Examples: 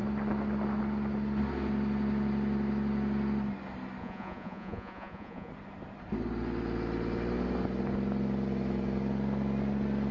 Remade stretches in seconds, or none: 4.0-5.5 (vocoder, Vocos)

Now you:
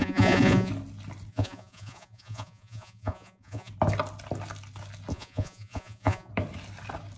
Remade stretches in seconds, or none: 0.0-0.7 (vocoder, Vocos); 1.3-3.7; 5.1-6.3